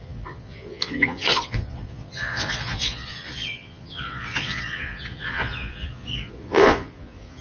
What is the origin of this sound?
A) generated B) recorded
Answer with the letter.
A